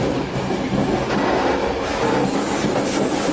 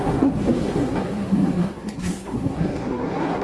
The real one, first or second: first